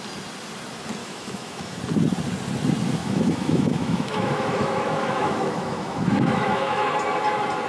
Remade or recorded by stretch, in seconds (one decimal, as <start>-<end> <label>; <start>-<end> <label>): 0.0-1.0 recorded; 1.0-1.8 remade; 1.8-3.0 recorded; 3.0-6.9 remade; 6.9-7.7 recorded